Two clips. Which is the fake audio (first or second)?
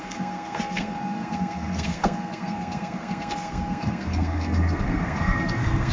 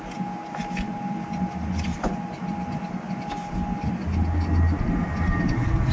first